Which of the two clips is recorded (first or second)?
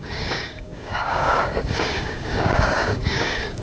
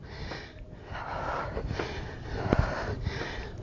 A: second